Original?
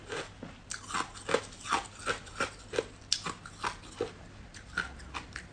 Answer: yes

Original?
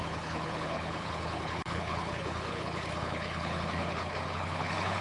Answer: no